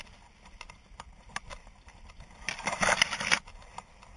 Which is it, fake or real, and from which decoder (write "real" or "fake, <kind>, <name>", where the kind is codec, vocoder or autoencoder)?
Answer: real